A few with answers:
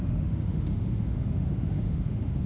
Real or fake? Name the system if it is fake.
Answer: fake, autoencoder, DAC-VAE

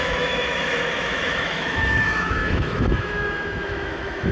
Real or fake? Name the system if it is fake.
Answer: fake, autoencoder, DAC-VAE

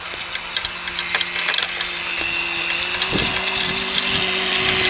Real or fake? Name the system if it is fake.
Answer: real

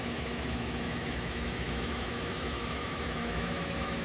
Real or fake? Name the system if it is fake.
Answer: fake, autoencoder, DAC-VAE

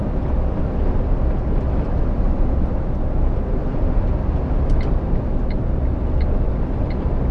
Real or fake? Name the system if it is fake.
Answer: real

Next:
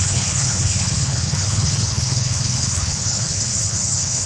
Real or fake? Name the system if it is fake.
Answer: fake, codec, HILCodec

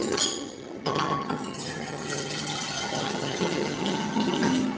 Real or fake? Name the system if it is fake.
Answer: fake, vocoder, HiFi-GAN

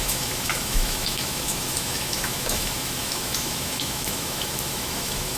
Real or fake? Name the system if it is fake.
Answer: fake, autoencoder, DAC-VAE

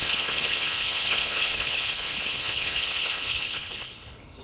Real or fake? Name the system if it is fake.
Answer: fake, codec, HILCodec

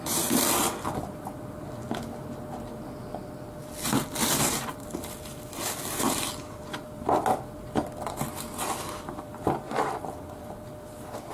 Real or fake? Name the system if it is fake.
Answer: fake, vocoder, BigVGAN v2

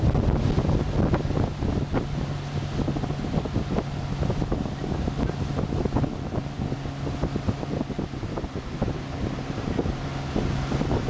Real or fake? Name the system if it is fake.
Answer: real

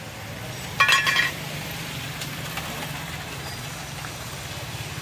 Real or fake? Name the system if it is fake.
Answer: real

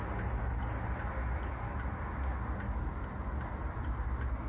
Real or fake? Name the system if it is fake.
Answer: real